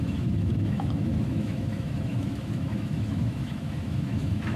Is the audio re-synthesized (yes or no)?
yes